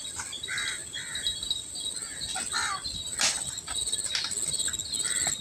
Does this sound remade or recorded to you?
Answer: recorded